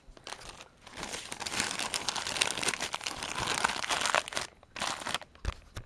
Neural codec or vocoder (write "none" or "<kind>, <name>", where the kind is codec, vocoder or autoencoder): none